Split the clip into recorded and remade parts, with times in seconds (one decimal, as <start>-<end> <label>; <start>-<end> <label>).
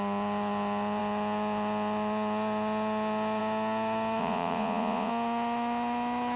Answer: 0.0-4.2 recorded; 4.2-5.1 remade; 5.1-6.4 recorded